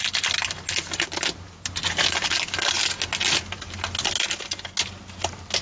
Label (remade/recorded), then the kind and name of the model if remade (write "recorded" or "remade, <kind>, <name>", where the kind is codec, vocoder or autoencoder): recorded